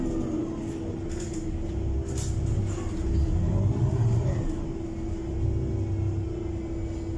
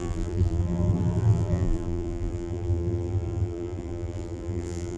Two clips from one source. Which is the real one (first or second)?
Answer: first